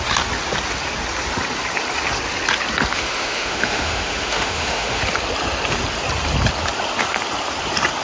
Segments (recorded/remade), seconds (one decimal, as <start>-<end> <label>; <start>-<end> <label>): 0.0-2.9 recorded; 2.9-5.0 remade; 5.0-8.0 recorded